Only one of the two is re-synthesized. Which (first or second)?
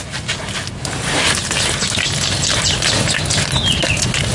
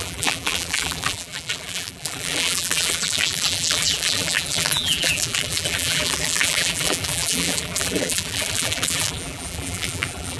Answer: second